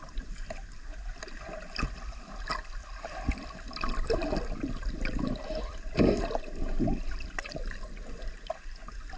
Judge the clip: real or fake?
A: real